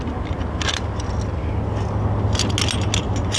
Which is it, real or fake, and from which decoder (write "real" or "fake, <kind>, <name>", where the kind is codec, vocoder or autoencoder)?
real